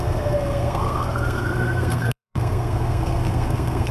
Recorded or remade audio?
remade